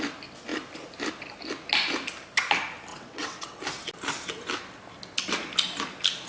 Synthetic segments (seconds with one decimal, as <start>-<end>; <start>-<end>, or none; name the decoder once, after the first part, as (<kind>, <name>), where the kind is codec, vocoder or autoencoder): 2.9-3.6 (vocoder, WaveNeXt)